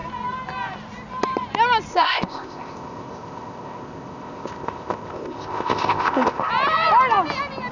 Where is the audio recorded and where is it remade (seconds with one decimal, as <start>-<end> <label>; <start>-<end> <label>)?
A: 0.0-1.9 recorded; 1.9-6.5 remade; 6.5-7.7 recorded